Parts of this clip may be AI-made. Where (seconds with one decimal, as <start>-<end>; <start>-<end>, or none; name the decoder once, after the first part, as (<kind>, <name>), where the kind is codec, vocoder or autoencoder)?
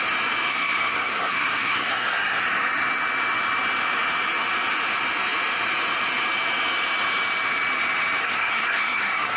0.5-2.4 (codec, SNAC); 8.2-9.4